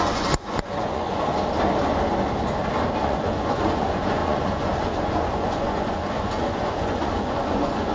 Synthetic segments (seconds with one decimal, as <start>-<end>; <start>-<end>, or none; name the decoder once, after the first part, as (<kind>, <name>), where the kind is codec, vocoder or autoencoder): 0.0-1.3 (vocoder, Vocos); 3.0-7.9